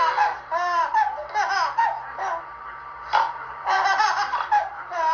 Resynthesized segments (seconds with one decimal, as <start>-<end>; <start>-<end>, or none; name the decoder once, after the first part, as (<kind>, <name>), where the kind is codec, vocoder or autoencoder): 0.0-1.2 (vocoder, BigVGAN v2); 2.6-5.1